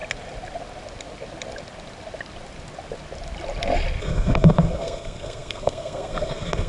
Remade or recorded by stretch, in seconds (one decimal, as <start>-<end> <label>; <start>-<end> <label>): 0.0-4.0 recorded; 4.0-6.7 remade